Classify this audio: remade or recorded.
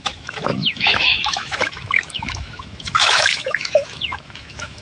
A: remade